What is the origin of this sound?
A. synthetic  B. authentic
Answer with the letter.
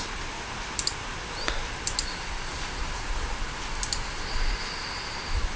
B